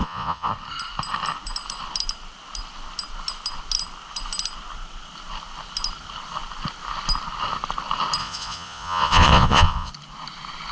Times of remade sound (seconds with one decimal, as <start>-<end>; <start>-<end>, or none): 0.0-0.5; 8.2-9.9